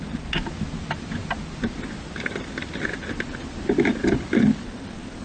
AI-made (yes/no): no